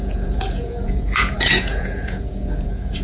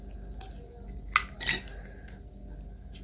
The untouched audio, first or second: second